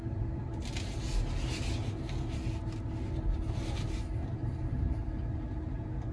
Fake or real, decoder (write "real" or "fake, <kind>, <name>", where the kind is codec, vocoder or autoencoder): real